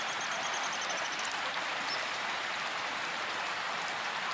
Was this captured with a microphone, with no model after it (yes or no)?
yes